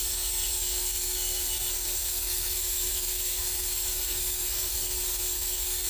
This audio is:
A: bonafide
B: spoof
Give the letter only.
B